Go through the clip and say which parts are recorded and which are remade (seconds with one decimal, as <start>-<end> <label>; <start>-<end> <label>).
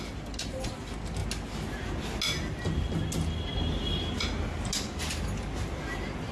0.0-6.3 recorded